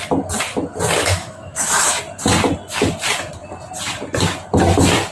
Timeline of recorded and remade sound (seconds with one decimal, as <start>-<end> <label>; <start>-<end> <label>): 0.0-1.0 recorded; 1.0-2.0 remade; 2.0-5.1 recorded